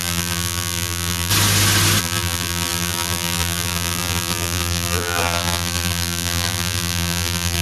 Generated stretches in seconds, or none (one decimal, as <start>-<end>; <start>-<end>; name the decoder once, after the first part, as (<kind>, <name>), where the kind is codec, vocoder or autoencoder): 0.0-1.3 (vocoder, BigVGAN v2); 2.0-7.6